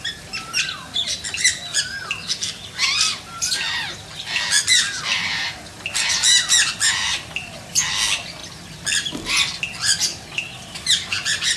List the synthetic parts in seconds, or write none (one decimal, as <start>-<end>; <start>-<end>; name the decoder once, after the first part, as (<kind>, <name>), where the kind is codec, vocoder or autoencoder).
none